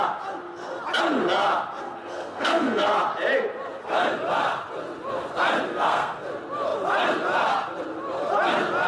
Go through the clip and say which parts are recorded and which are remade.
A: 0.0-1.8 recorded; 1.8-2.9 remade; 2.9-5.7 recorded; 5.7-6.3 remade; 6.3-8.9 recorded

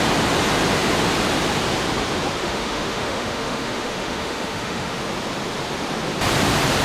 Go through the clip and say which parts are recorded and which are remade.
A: 0.0-2.4 recorded; 2.4-5.1 remade; 5.1-6.8 recorded

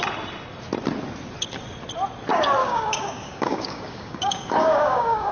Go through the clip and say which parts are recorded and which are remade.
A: 0.0-2.6 recorded; 2.6-5.3 remade

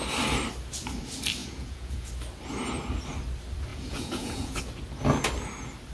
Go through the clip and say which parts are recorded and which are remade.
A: 0.0-1.4 recorded; 1.4-2.1 remade; 2.1-3.7 recorded; 3.7-4.6 remade; 4.6-5.9 recorded